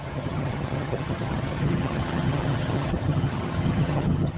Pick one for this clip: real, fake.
fake